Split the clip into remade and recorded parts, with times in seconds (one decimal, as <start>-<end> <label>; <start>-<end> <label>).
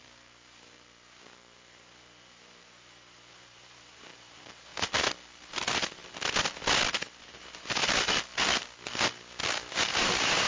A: 0.0-4.7 remade; 4.7-5.5 recorded; 5.5-6.0 remade; 6.0-7.2 recorded; 7.2-7.8 remade; 7.8-9.9 recorded; 9.9-10.5 remade